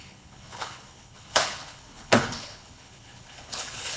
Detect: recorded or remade remade